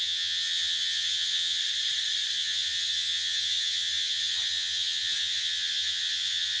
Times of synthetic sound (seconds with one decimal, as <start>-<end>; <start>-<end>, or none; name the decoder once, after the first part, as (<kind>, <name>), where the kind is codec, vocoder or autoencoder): 0.0-1.6 (vocoder, HiFi-GAN); 2.3-6.6